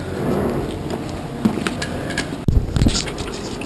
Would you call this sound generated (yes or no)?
no